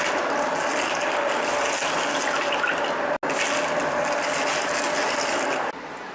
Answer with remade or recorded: recorded